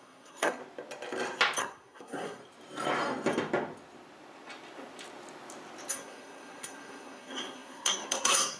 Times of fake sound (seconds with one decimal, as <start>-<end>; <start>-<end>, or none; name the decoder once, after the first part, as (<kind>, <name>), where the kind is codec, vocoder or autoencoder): 0.0-0.6 (codec, SNAC); 1.6-2.4; 5.9-8.6